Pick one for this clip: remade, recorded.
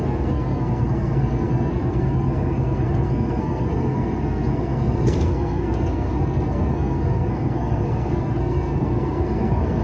remade